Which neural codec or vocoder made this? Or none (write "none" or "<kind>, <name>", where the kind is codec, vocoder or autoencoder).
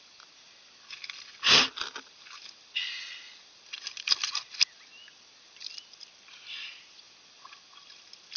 none